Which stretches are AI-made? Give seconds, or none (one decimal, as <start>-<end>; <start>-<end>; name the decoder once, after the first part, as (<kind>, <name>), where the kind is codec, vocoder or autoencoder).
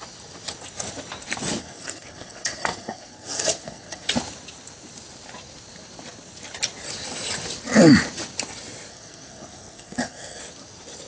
1.6-4.1 (codec, SNAC); 8.9-10.4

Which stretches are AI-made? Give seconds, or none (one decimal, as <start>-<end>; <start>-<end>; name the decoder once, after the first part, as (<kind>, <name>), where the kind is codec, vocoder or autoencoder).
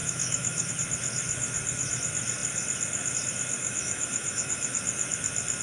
0.0-0.7 (autoencoder, DAC-VAE); 3.6-4.8